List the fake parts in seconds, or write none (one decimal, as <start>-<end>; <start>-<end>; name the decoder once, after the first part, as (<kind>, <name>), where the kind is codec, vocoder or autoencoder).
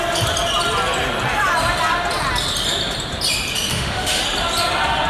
3.7-4.2 (autoencoder, DAC-VAE)